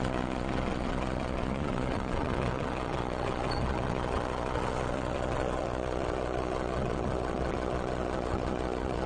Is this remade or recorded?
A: remade